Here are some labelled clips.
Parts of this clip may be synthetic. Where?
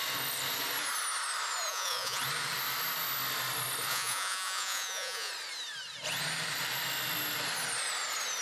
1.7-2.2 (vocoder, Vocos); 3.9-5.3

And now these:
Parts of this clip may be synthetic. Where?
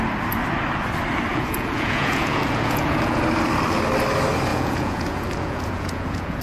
1.3-3.2 (vocoder, Vocos); 4.5-6.4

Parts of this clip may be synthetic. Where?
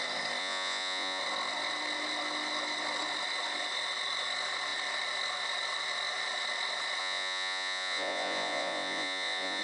0.4-1.2 (vocoder, Vocos); 7.0-9.6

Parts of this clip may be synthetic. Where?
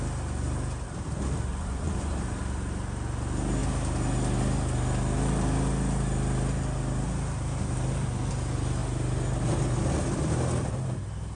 1.5-2.1 (vocoder, Vocos)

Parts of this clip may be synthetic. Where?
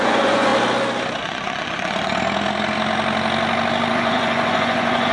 0.0-0.5 (vocoder, Vocos); 1.2-2.1; 3.9-5.1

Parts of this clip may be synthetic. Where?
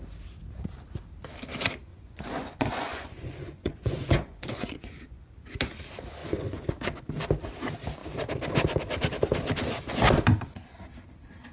1.9-5.3 (vocoder, Vocos); 6.2-6.7